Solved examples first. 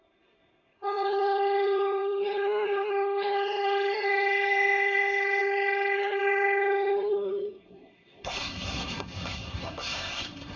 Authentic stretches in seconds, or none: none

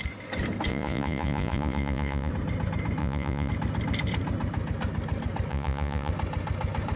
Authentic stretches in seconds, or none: 0.0-0.7; 2.3-3.0; 3.5-5.5; 6.1-7.0

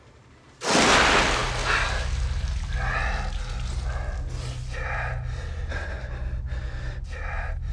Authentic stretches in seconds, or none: 0.0-7.7

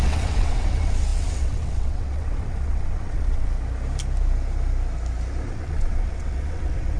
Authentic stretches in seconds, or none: 3.5-5.5